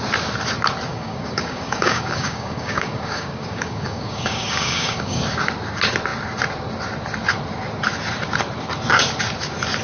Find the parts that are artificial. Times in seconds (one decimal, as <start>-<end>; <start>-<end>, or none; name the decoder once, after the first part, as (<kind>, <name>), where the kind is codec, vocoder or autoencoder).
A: 0.9-5.2 (codec, DAC)

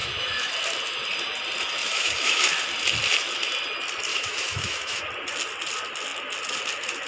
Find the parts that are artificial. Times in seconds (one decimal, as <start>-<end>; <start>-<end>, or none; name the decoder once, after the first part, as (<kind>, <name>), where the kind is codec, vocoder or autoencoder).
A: 0.0-0.5 (autoencoder, DAC-VAE); 1.8-2.5; 4.1-5.0

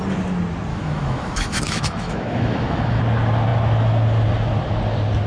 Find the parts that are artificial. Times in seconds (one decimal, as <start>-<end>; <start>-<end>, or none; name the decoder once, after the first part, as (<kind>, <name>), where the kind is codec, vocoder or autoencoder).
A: 0.7-3.0 (autoencoder, DAC-VAE)

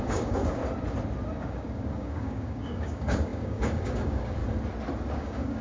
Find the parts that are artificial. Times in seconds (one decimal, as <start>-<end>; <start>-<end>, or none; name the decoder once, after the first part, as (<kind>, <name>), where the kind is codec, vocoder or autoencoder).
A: 0.0-0.6 (codec, DAC); 1.4-4.4; 5.1-5.6

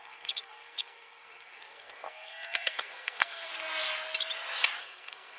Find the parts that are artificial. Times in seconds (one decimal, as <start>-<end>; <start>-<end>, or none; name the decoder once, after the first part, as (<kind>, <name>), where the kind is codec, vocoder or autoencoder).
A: 0.0-3.5 (codec, SNAC); 4.8-5.4

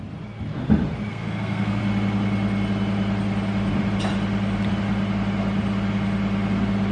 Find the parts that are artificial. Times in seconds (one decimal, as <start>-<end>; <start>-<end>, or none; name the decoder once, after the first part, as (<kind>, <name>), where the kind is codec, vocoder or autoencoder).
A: 1.1-1.8 (codec, SNAC)

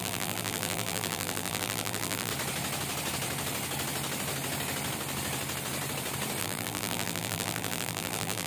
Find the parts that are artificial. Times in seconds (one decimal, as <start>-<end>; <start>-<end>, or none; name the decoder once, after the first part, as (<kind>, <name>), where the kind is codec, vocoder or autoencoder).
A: 0.0-2.3 (vocoder, BigVGAN v2); 6.4-8.5